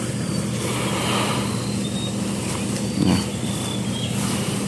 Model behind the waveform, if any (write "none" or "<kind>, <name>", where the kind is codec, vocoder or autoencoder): none